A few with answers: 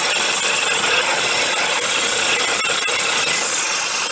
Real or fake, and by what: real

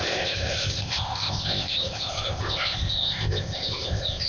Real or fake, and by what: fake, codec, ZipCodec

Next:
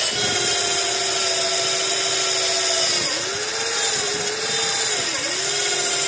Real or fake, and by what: real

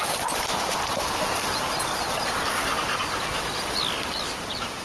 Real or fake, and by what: real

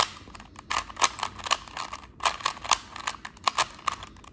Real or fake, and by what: real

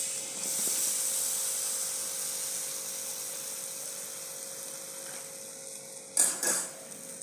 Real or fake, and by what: real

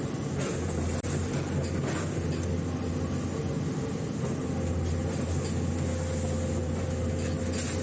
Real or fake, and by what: real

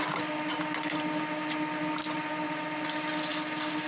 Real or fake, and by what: real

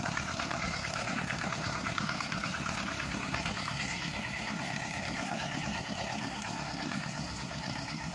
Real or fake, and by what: fake, codec, SNAC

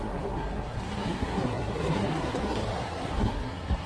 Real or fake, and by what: fake, codec, SNAC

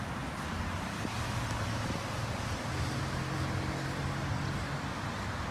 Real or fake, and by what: real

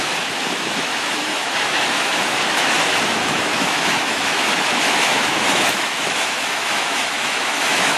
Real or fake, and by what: fake, autoencoder, DAC-VAE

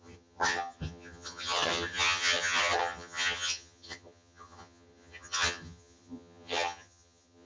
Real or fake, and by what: fake, vocoder, HiFi-GAN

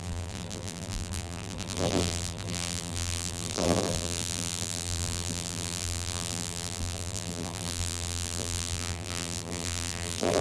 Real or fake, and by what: fake, vocoder, BigVGAN v2